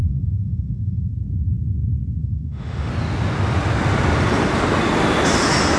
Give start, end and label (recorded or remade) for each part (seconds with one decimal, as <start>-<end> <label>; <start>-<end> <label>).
0.0-1.1 remade; 1.1-2.2 recorded; 2.2-2.9 remade; 2.9-5.8 recorded